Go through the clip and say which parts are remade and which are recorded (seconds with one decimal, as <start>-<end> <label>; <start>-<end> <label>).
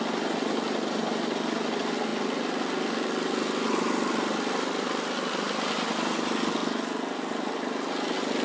0.0-8.4 recorded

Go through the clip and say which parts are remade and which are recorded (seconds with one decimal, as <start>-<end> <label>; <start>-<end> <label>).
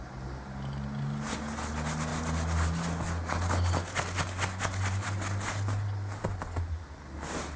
0.0-7.6 recorded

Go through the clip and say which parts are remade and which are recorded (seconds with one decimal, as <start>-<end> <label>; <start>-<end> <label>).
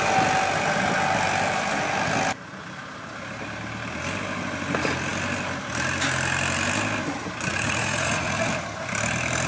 0.0-7.5 recorded; 7.5-8.5 remade; 8.5-9.5 recorded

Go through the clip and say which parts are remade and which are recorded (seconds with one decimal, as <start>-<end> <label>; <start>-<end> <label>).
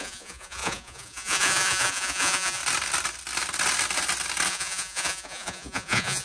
0.0-2.6 remade; 2.6-4.5 recorded; 4.5-6.2 remade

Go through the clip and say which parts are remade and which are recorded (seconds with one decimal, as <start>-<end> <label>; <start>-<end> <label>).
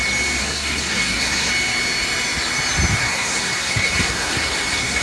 0.0-0.4 recorded; 0.4-1.5 remade; 1.5-3.0 recorded; 3.0-5.0 remade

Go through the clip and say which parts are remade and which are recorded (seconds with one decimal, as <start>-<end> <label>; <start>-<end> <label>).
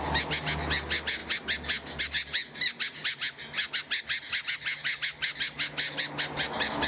0.0-6.9 recorded